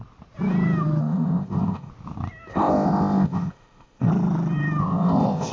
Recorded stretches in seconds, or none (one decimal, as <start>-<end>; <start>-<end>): 0.0-1.0; 1.9-2.5; 4.1-4.8